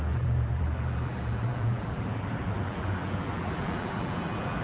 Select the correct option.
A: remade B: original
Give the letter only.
A